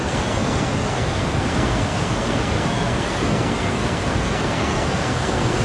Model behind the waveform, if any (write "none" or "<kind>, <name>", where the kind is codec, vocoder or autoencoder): codec, SNAC